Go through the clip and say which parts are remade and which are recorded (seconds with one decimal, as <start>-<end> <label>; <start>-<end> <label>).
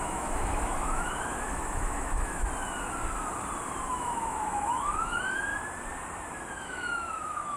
0.0-2.4 remade; 2.4-3.9 recorded; 3.9-5.5 remade; 5.5-6.5 recorded; 6.5-7.6 remade